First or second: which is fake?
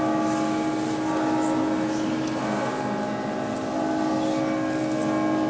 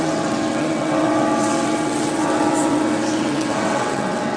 second